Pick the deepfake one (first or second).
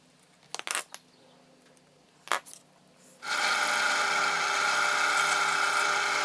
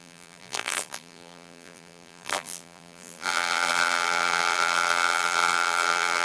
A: second